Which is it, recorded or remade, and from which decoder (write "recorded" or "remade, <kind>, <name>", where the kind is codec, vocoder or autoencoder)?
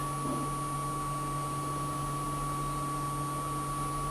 recorded